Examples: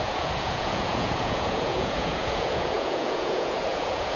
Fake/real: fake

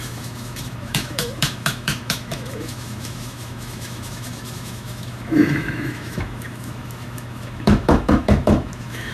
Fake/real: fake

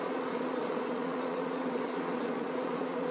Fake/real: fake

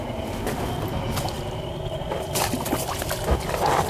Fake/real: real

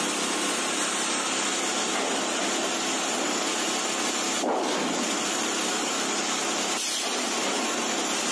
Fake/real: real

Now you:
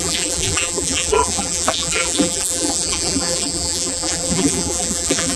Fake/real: fake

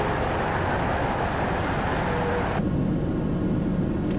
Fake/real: real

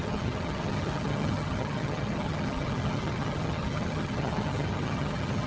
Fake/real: fake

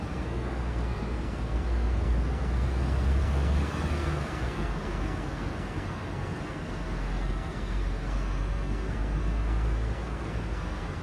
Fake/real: fake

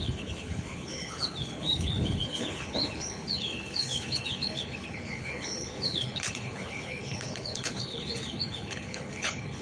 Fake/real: fake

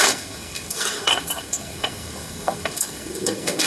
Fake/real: fake